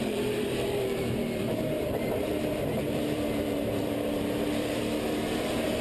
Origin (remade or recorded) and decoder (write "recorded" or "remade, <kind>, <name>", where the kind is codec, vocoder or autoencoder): remade, vocoder, BigVGAN v2